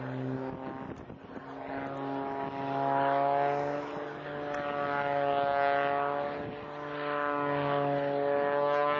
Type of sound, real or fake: real